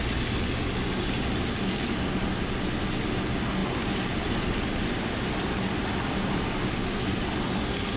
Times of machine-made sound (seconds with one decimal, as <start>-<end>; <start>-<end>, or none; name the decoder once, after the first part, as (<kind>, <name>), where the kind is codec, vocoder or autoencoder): 3.6-6.4 (vocoder, BigVGAN v2)